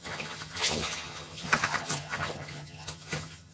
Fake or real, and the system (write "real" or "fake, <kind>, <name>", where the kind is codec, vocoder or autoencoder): fake, vocoder, HiFi-GAN